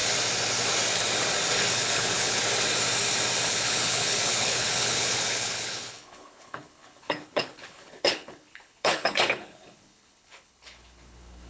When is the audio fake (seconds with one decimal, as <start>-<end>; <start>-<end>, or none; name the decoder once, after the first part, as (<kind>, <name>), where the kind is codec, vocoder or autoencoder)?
1.7-2.4 (codec, HILCodec); 3.5-11.5